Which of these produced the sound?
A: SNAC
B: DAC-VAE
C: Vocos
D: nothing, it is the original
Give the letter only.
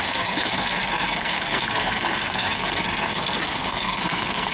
A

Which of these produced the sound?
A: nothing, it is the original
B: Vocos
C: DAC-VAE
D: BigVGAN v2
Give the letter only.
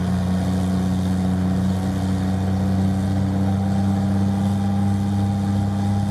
A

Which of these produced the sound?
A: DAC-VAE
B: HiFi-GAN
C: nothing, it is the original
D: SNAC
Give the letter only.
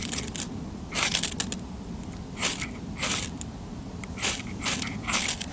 C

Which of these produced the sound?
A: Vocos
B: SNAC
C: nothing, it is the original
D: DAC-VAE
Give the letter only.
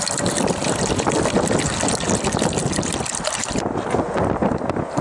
C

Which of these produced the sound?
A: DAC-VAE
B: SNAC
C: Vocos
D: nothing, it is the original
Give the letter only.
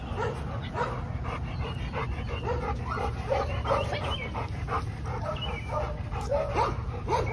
D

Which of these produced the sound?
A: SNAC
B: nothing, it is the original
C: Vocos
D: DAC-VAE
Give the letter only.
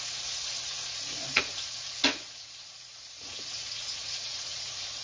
C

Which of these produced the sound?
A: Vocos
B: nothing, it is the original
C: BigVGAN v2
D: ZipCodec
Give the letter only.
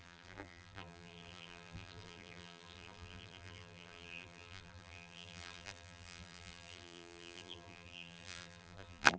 C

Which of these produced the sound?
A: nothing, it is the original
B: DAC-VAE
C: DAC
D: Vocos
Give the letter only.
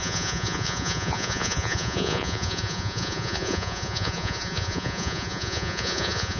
D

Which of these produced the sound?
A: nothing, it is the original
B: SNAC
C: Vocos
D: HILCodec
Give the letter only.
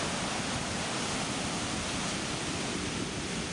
A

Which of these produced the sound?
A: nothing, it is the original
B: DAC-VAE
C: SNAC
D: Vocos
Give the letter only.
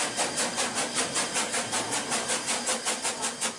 A